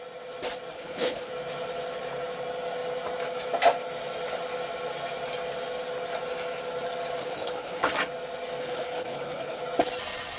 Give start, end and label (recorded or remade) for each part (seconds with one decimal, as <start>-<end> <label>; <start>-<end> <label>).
0.0-0.7 recorded; 0.7-1.3 remade; 1.3-7.2 recorded; 7.2-7.9 remade; 7.9-8.6 recorded; 8.6-9.6 remade; 9.6-10.4 recorded